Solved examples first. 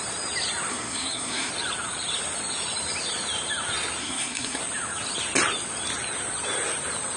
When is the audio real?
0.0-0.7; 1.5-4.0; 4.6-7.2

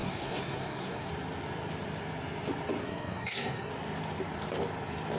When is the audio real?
1.1-2.8; 3.7-5.2

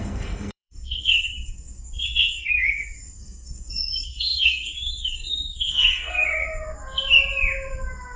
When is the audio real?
6.4-8.2

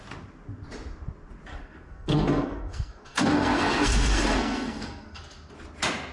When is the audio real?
0.0-1.5; 5.2-6.1

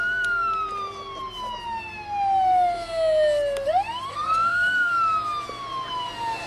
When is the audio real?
0.0-4.1; 4.9-6.5